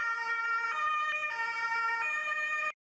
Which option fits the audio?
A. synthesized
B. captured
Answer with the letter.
B